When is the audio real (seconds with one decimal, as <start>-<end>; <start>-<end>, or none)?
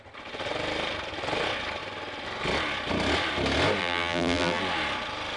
0.0-3.8; 4.6-5.4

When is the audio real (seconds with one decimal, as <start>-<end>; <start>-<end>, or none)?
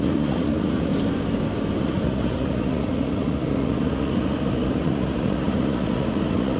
0.9-1.8